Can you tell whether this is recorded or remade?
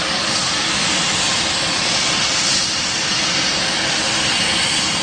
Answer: recorded